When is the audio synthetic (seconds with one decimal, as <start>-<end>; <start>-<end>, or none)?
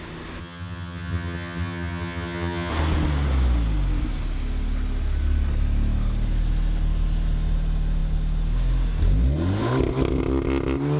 0.4-2.7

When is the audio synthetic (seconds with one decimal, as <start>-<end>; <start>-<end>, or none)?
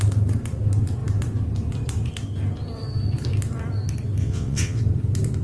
4.2-4.8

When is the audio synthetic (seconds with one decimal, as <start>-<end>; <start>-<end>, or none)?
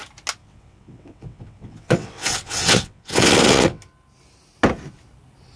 0.4-3.8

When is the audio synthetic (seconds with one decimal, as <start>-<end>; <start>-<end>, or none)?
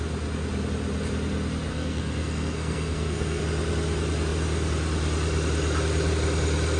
1.7-3.4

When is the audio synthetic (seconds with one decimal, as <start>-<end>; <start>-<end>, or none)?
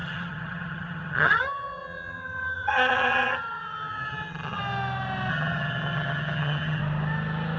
0.0-4.6; 5.3-6.8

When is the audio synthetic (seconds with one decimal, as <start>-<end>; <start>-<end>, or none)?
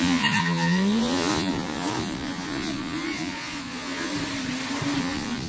0.0-4.1; 5.0-5.5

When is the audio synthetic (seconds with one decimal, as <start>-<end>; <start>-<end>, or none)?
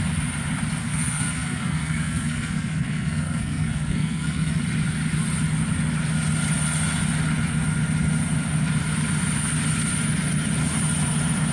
0.8-4.6